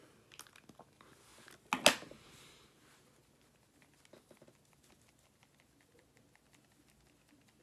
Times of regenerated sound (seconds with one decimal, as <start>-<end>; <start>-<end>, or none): none